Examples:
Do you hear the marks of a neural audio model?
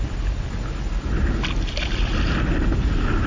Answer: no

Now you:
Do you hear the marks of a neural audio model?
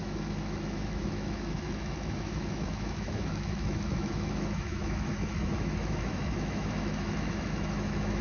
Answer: yes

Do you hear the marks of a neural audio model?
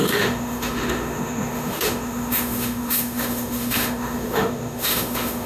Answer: yes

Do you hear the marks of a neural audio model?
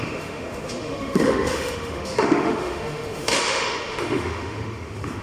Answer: yes